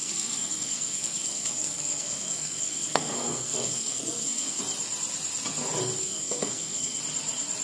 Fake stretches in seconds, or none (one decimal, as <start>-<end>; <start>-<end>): 0.0-4.6; 6.0-7.0